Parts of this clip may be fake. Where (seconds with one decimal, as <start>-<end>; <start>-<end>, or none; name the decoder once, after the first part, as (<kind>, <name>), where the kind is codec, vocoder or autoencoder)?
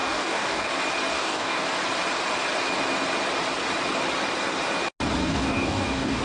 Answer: 0.0-0.7 (codec, DAC); 1.1-1.7; 5.2-6.2